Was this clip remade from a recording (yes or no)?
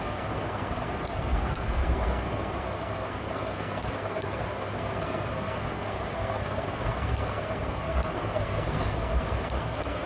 yes